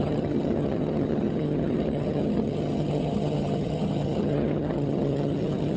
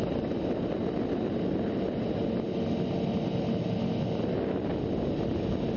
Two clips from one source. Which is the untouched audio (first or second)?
second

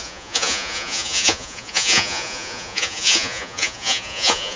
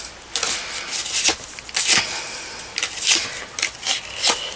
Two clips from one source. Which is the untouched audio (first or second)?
second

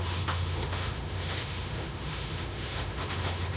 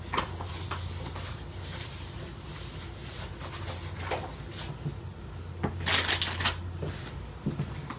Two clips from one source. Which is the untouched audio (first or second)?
second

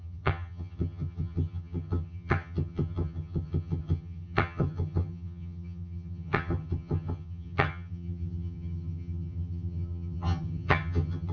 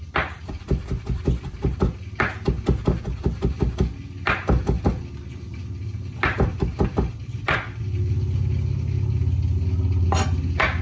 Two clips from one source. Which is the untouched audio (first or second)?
second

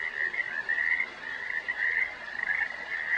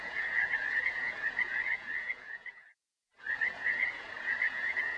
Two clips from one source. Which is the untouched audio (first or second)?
first